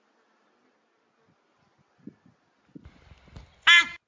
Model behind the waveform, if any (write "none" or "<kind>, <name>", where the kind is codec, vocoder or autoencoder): none